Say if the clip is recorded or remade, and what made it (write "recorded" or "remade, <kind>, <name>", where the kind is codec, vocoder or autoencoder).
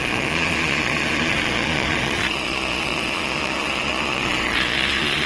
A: remade, vocoder, Vocos